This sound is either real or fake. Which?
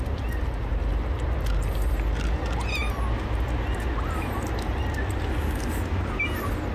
real